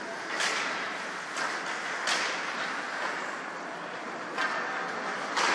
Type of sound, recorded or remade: recorded